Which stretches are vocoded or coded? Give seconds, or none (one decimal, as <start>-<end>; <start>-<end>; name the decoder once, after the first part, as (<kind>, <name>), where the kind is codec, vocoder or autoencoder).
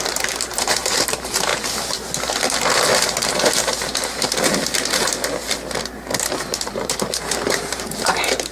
0.0-1.5 (vocoder, BigVGAN v2); 6.3-8.5